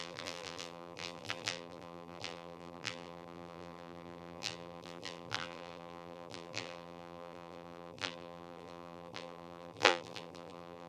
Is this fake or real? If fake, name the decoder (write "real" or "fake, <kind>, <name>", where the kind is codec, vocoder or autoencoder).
fake, vocoder, BigVGAN v2